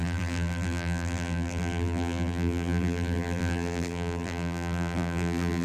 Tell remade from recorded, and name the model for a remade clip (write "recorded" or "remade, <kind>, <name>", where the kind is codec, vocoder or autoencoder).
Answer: remade, vocoder, BigVGAN v2